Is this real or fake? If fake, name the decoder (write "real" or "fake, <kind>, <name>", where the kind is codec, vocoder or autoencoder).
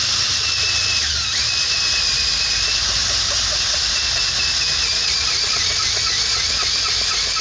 real